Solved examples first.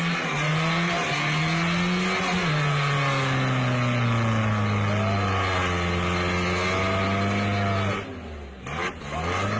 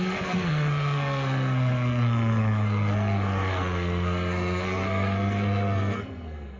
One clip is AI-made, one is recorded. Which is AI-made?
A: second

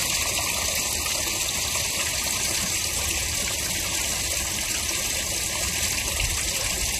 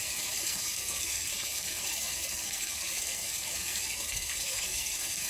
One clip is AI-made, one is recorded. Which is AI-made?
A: second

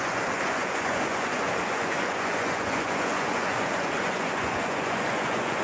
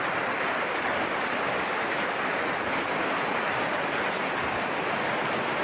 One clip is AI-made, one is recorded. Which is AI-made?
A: first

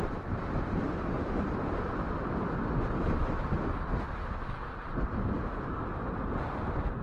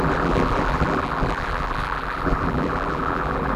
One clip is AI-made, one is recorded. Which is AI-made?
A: second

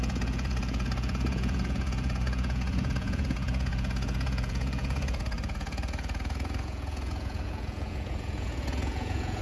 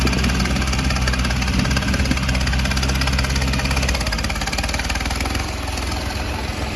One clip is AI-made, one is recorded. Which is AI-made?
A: first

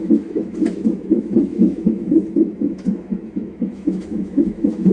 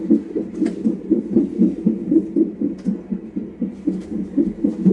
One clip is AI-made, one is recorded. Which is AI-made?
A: first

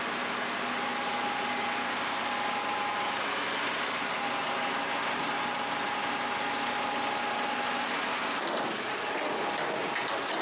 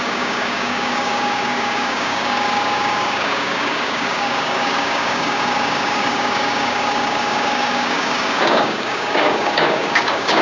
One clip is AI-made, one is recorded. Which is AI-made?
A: second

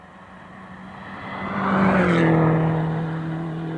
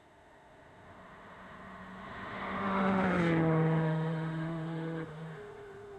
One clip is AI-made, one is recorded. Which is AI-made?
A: second